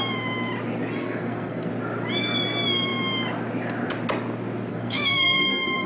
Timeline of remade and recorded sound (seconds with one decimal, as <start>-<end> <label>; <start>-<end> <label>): 0.0-1.0 recorded; 1.0-1.7 remade; 1.7-4.7 recorded; 4.7-5.9 remade